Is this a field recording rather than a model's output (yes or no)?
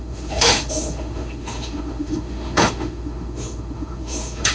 no